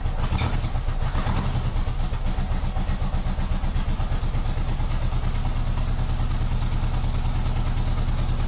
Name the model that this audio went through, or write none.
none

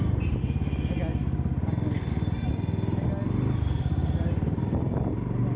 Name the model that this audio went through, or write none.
none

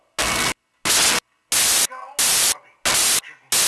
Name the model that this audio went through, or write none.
none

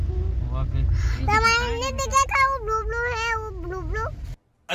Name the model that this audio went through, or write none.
none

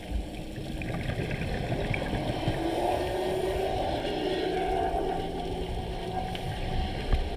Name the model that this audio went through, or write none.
none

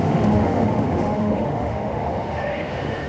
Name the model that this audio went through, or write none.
autoencoder, DAC-VAE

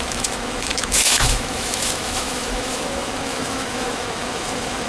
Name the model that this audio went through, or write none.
autoencoder, DAC-VAE